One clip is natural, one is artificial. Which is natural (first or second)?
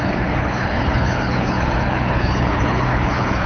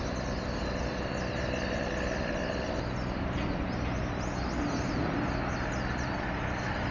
second